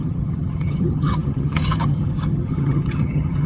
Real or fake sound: fake